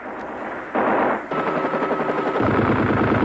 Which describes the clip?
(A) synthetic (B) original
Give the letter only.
B